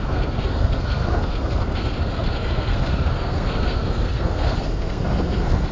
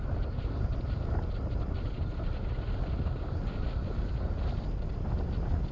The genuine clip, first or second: second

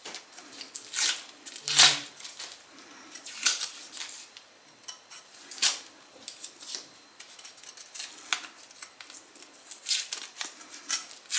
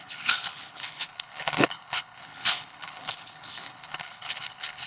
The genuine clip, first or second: first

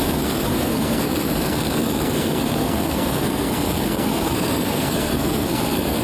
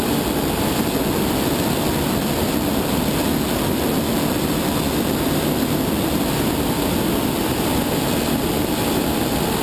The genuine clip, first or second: second